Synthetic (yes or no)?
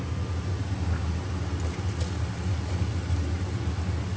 no